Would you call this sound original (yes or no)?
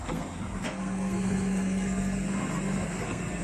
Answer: no